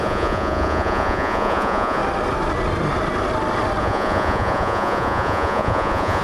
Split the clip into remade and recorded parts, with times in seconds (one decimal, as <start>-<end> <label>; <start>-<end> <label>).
0.0-2.0 remade; 2.0-3.8 recorded; 3.8-6.2 remade